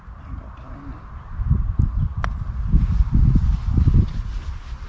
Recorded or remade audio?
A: recorded